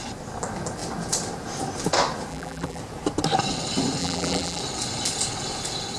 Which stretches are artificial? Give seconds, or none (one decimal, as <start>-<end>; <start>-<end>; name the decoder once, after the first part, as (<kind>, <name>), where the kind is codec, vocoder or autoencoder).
2.3-2.8 (vocoder, BigVGAN v2); 4.0-4.6